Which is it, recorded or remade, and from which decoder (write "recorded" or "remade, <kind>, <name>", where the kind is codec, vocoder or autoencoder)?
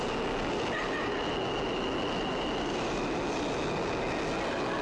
recorded